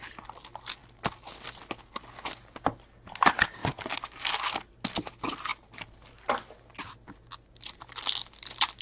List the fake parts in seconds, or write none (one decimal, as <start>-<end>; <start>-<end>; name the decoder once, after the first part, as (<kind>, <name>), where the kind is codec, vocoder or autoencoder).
none